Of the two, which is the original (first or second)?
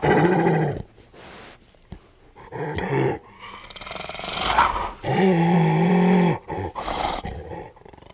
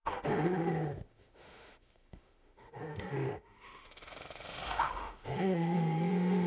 first